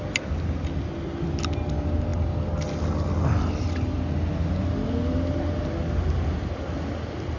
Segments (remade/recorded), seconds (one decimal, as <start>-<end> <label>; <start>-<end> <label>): 0.0-7.4 recorded

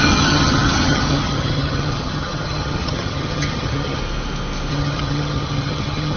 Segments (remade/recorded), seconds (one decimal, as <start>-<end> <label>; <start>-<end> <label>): 0.0-4.0 remade; 4.0-4.7 recorded; 4.7-6.2 remade

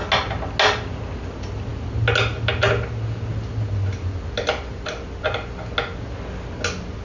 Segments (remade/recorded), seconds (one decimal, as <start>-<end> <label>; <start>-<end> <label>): 0.0-7.0 recorded

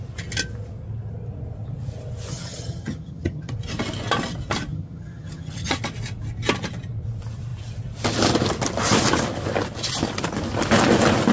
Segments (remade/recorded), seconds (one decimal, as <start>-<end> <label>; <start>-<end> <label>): 0.0-2.3 recorded; 2.3-3.5 remade; 3.5-4.7 recorded; 4.7-5.8 remade; 5.8-11.3 recorded

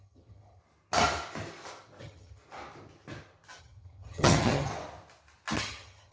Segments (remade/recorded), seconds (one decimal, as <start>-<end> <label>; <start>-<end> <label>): 0.0-0.6 remade; 0.6-2.0 recorded; 2.0-2.4 remade; 2.4-3.6 recorded; 3.6-4.7 remade; 4.7-5.6 recorded; 5.6-6.1 remade